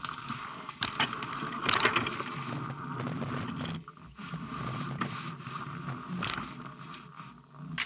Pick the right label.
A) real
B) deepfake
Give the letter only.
A